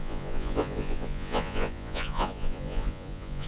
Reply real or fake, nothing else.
fake